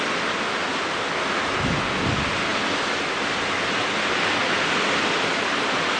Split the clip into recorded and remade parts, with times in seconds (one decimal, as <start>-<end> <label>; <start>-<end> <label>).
0.0-6.0 recorded